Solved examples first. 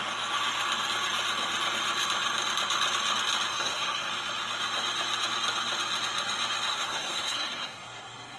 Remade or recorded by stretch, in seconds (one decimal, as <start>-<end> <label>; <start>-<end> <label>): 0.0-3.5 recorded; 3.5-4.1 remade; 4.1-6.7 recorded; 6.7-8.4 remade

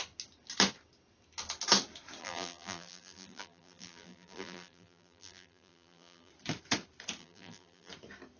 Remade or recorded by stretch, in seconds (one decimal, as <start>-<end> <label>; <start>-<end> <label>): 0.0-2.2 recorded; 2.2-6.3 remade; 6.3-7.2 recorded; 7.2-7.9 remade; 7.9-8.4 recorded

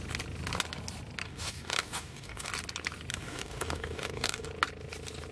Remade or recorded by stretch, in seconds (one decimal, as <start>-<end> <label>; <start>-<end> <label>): 0.0-1.2 recorded; 1.2-2.5 remade; 2.5-3.1 recorded; 3.1-4.5 remade; 4.5-5.3 recorded